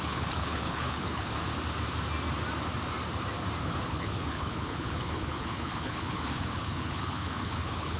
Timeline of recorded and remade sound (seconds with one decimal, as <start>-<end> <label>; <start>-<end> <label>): 0.0-1.3 remade; 1.3-3.6 recorded; 3.6-8.0 remade